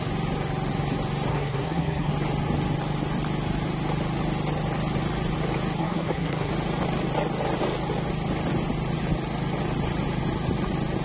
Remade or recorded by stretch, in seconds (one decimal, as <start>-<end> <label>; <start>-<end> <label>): 0.0-1.3 recorded; 1.3-2.1 remade; 2.1-5.8 recorded; 5.8-6.5 remade; 6.5-11.0 recorded